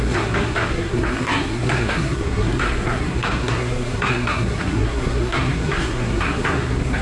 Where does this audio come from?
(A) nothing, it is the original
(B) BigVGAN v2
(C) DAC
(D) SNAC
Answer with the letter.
D